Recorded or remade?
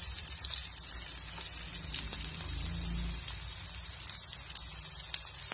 recorded